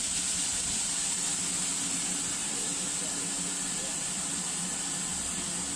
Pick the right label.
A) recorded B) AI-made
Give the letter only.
A